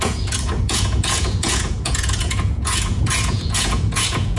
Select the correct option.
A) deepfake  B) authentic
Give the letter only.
A